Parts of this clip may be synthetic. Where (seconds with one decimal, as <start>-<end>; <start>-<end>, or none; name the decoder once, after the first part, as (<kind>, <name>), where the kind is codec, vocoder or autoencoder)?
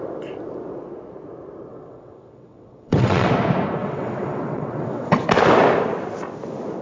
1.7-3.3 (vocoder, WaveNeXt); 3.8-5.1